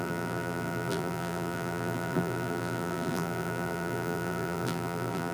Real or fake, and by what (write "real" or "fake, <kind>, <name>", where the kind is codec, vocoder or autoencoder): fake, vocoder, BigVGAN v2